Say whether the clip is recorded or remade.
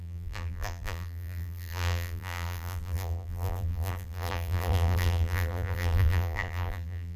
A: remade